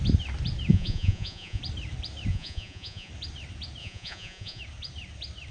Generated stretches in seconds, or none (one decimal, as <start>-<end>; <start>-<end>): 0.7-1.6; 2.3-3.1; 3.8-4.6